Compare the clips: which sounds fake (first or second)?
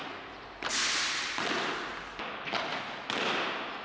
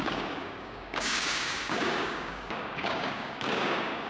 second